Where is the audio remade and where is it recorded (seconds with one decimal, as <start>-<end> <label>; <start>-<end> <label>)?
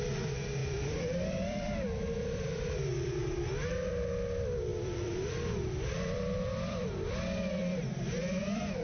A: 0.0-0.6 recorded; 0.6-3.9 remade; 3.9-4.7 recorded; 4.7-8.8 remade